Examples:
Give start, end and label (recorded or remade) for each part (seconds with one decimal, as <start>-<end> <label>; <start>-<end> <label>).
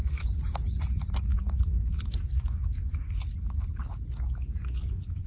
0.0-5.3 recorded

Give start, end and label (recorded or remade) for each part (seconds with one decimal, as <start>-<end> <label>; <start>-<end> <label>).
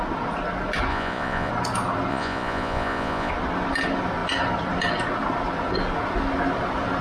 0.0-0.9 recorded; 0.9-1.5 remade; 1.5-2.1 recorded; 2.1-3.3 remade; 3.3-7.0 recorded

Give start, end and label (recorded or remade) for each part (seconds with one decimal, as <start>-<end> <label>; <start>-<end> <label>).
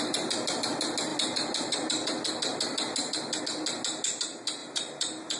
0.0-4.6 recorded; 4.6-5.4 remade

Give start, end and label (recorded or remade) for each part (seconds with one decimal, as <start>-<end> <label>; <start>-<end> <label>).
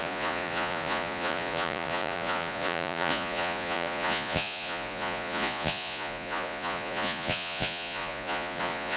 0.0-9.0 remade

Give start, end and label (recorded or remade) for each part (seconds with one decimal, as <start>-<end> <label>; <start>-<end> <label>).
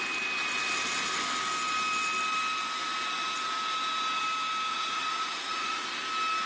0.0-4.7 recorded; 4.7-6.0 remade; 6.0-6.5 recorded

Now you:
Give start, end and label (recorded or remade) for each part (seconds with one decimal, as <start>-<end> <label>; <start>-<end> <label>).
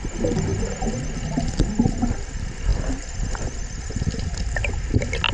0.0-5.3 recorded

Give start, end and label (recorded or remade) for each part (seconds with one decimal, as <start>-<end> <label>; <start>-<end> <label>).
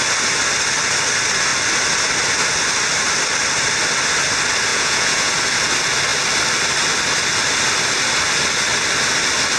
0.0-4.7 recorded; 4.7-5.3 remade; 5.3-9.6 recorded